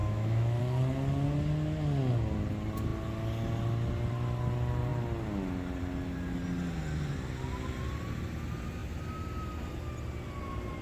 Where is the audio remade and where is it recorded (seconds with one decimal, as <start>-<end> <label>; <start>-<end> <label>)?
0.0-0.6 remade; 0.6-10.8 recorded

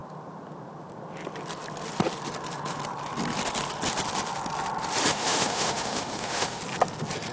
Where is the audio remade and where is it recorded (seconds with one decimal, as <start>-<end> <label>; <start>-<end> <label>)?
0.0-5.1 recorded; 5.1-6.6 remade; 6.6-7.3 recorded

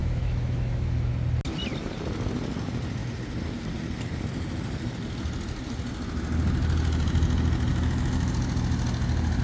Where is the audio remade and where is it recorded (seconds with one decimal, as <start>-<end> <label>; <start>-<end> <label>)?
0.0-1.1 remade; 1.1-7.7 recorded; 7.7-8.3 remade; 8.3-9.4 recorded

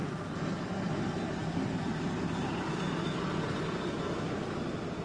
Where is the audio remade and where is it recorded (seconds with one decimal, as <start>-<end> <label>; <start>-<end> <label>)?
0.0-5.0 recorded

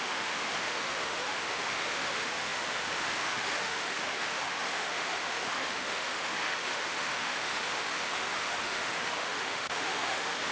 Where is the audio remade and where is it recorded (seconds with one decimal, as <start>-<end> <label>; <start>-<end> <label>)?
0.0-10.5 remade